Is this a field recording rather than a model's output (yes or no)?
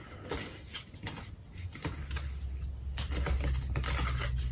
yes